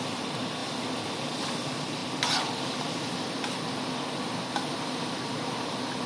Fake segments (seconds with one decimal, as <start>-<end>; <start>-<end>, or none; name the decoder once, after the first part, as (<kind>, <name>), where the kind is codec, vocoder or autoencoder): none